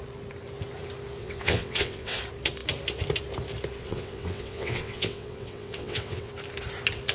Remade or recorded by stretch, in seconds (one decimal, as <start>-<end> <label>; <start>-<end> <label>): 0.0-1.2 recorded; 1.2-2.2 remade; 2.2-3.8 recorded; 3.8-6.3 remade; 6.3-7.1 recorded